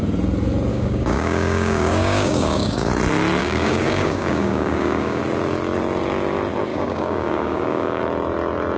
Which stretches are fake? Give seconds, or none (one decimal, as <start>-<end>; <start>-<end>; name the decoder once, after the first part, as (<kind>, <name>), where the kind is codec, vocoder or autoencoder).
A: 0.7-2.9 (codec, DAC); 3.4-5.2; 6.7-8.0